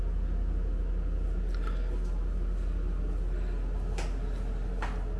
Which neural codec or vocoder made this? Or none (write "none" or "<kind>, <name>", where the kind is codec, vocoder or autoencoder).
none